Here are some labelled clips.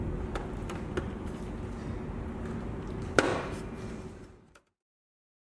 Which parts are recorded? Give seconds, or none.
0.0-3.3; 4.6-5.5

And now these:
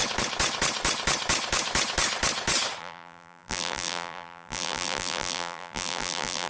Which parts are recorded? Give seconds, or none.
0.0-2.8

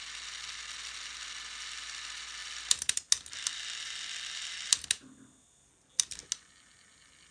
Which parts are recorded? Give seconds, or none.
0.0-7.3

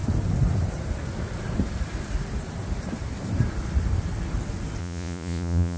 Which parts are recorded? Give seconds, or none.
0.0-4.8

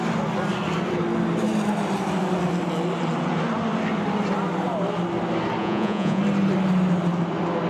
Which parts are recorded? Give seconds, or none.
0.0-5.6; 6.2-7.7

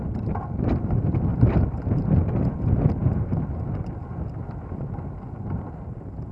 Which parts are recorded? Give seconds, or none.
0.0-1.3; 2.2-6.3